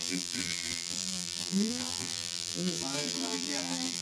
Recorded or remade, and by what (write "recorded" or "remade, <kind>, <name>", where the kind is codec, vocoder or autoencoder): remade, vocoder, BigVGAN v2